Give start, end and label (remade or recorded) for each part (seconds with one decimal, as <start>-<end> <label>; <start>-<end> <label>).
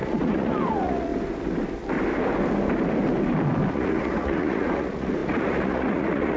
0.0-1.1 remade; 1.1-3.7 recorded; 3.7-6.4 remade